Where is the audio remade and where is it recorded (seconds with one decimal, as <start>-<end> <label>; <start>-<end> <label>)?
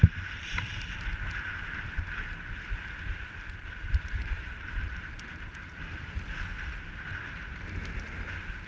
0.0-3.8 recorded; 3.8-4.9 remade; 4.9-8.7 recorded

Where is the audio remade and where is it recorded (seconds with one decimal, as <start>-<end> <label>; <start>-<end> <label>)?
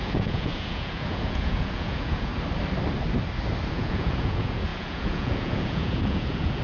0.0-2.3 remade; 2.3-3.7 recorded; 3.7-6.6 remade